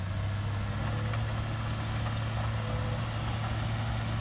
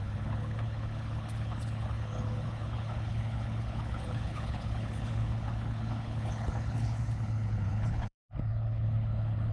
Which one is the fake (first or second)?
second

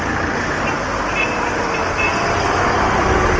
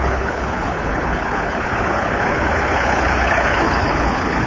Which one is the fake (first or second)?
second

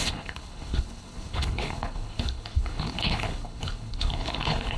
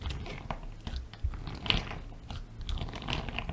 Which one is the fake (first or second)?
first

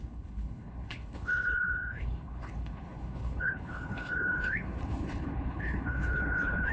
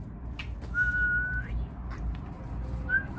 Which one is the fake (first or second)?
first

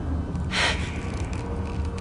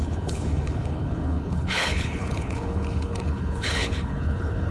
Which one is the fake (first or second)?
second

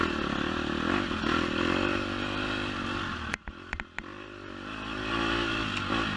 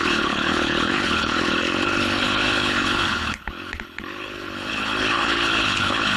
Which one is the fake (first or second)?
second